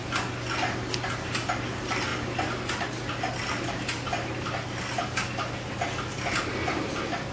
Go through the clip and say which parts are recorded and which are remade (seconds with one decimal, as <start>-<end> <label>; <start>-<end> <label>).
0.0-7.3 recorded